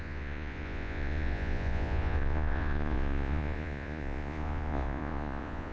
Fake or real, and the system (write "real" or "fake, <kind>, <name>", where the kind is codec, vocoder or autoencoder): fake, vocoder, Vocos